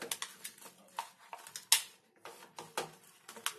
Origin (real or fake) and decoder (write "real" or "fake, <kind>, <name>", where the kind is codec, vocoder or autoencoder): real